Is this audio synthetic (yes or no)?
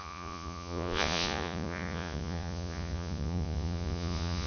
yes